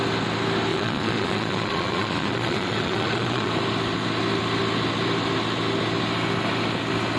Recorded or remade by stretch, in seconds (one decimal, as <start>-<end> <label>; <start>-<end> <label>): 0.0-0.7 recorded; 0.7-3.5 remade; 3.5-7.2 recorded